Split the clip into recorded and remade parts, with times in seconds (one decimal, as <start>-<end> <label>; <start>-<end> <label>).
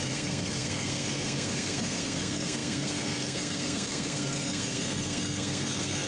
0.0-6.1 remade